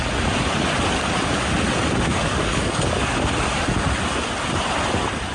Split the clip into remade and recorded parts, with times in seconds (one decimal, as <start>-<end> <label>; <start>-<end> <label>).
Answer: 0.0-2.1 recorded; 2.1-3.1 remade; 3.1-5.3 recorded